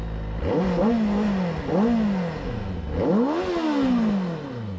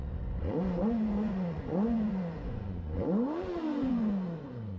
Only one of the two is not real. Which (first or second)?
second